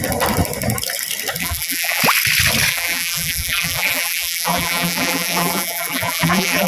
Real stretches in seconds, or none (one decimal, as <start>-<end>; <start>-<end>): 0.0-1.4; 2.0-2.7